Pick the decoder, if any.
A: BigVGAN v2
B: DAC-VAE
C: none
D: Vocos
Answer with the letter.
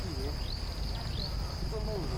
C